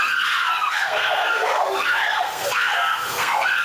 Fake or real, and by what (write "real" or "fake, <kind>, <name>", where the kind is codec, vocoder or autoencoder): fake, codec, SNAC